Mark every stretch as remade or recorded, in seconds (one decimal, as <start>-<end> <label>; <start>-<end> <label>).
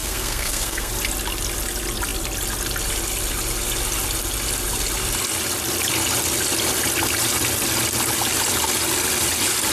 0.0-0.9 remade; 0.9-9.7 recorded